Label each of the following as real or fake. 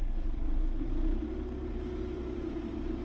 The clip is fake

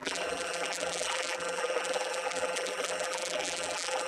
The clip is fake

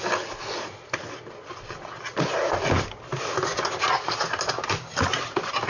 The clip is real